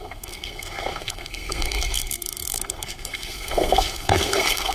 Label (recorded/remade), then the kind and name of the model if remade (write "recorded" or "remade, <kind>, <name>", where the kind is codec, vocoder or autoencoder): remade, codec, SNAC